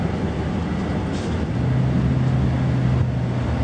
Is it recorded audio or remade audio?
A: recorded